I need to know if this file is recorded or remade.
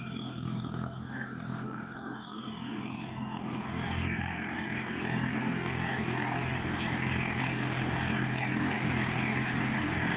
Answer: remade